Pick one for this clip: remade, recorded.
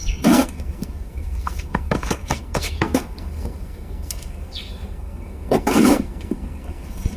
remade